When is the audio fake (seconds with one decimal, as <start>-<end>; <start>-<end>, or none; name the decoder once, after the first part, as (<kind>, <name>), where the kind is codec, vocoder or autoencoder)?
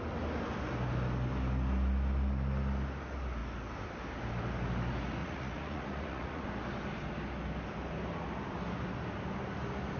5.2-6.4 (vocoder, Vocos)